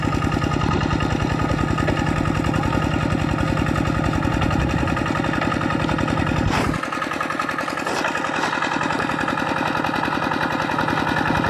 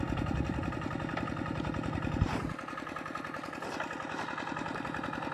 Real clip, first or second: first